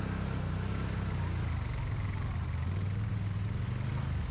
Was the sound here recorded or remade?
recorded